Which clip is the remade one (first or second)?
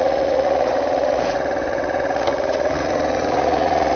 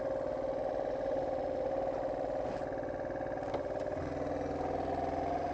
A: first